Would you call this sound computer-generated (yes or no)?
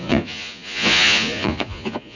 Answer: yes